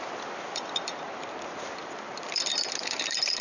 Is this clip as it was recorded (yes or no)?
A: no